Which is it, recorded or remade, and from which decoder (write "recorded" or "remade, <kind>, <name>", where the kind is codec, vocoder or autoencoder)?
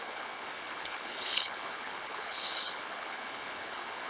remade, codec, HILCodec